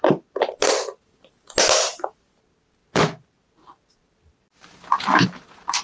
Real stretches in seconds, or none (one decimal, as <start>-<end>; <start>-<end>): 0.0-5.8